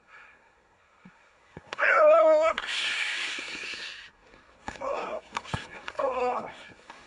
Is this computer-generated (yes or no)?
yes